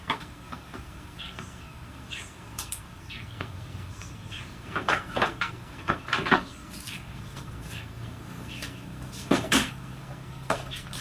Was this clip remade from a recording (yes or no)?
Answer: yes